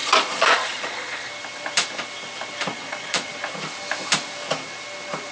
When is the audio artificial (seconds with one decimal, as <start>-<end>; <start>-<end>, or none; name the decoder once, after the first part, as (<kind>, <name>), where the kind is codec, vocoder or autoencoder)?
0.0-1.3 (vocoder, Vocos); 2.7-3.3